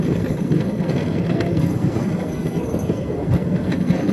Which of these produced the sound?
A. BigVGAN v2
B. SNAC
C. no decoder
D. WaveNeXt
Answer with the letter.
B